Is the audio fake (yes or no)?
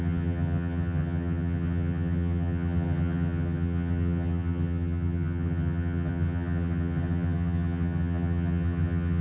yes